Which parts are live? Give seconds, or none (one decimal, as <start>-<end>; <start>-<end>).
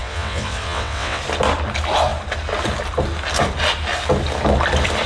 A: 1.2-5.1